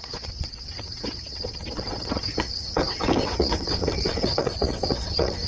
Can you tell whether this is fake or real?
fake